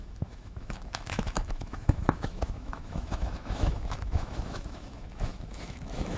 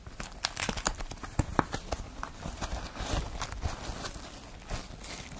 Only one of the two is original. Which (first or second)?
second